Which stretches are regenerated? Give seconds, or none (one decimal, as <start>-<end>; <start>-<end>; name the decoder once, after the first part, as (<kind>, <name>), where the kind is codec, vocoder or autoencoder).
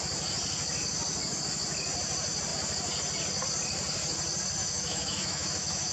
4.6-5.9 (autoencoder, DAC-VAE)